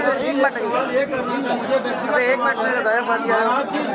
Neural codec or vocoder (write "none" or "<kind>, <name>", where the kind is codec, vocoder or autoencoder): none